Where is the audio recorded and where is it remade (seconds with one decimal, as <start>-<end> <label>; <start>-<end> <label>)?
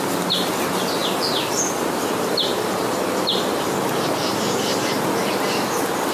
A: 0.0-6.1 recorded